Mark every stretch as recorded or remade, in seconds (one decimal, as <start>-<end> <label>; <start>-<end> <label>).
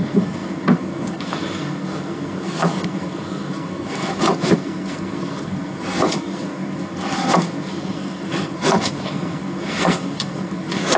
0.0-11.0 remade